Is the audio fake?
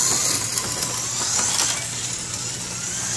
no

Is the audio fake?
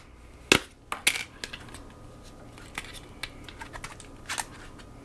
no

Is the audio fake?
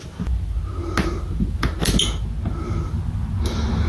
no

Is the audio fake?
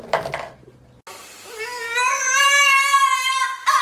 no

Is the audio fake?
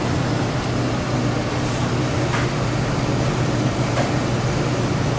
no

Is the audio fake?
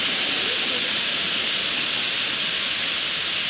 no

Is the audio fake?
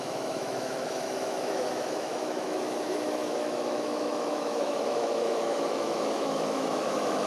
yes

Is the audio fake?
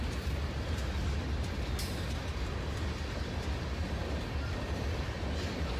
no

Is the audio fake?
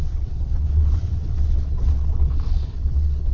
yes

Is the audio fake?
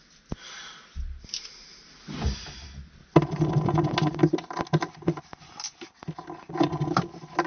no